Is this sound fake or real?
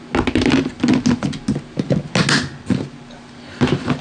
real